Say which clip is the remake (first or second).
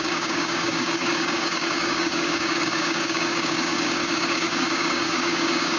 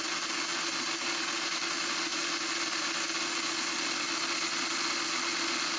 first